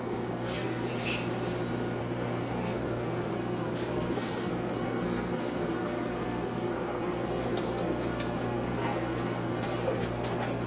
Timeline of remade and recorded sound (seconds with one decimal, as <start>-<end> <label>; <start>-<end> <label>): 0.0-0.9 remade; 0.9-2.0 recorded; 2.0-10.7 remade